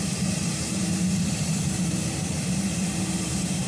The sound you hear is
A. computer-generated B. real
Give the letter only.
A